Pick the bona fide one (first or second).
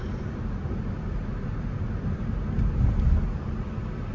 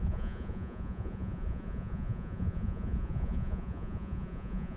first